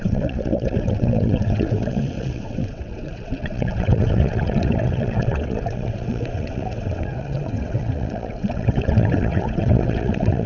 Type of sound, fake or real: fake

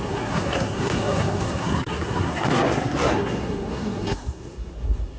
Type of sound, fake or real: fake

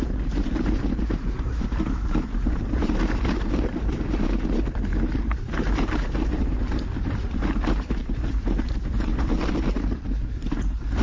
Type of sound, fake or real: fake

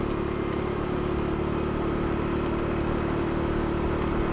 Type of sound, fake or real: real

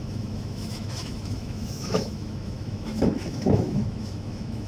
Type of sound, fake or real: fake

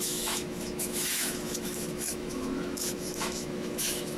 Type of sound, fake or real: fake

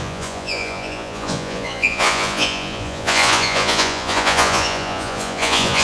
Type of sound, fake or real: fake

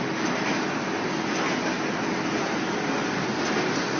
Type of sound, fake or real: real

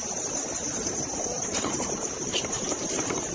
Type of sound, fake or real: fake